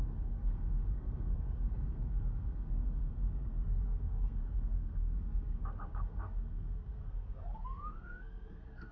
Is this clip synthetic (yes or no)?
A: yes